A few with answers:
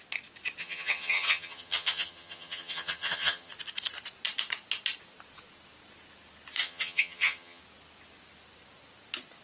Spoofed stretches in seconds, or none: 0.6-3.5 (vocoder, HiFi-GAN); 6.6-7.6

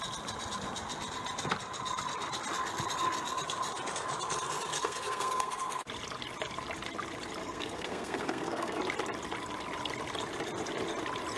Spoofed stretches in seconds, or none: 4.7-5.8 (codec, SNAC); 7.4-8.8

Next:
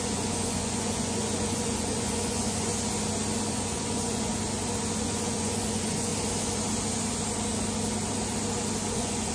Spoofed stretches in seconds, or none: 0.0-2.7 (vocoder, Vocos); 3.5-4.3; 5.0-6.1; 8.9-9.3

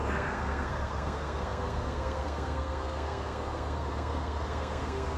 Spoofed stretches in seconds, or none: 0.0-5.2 (codec, SNAC)

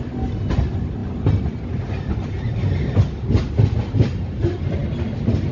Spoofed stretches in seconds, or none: none